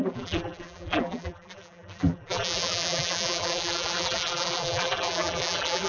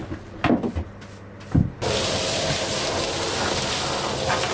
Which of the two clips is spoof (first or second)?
first